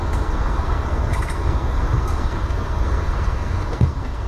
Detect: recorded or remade remade